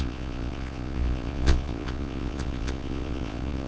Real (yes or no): no